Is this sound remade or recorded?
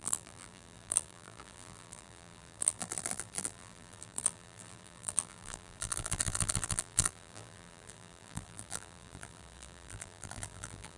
remade